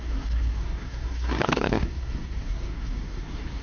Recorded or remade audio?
remade